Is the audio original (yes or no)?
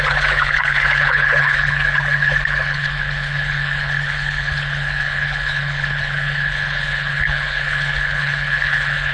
no